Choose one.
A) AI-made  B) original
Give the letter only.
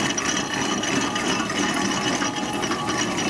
B